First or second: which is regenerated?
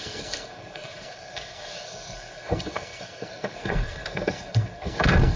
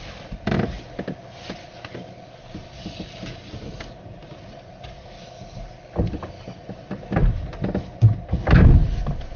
first